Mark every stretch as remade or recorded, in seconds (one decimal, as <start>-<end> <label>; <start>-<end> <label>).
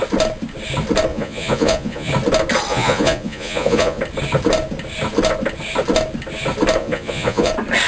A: 0.0-1.1 recorded; 1.1-2.1 remade; 2.1-2.7 recorded; 2.7-4.0 remade; 4.0-6.8 recorded; 6.8-7.5 remade; 7.5-7.9 recorded